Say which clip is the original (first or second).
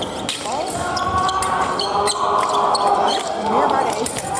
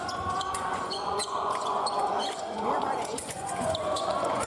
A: first